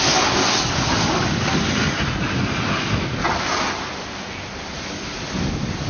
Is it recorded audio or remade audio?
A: recorded